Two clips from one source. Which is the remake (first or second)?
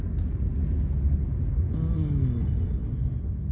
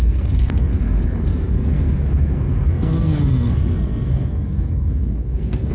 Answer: second